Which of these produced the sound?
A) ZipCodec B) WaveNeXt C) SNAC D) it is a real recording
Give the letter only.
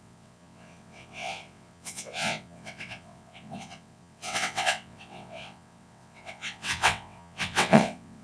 B